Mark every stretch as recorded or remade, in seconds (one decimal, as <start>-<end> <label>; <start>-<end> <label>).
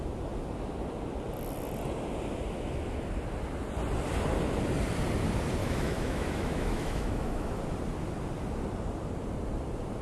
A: 0.0-5.6 recorded; 5.6-7.6 remade; 7.6-10.0 recorded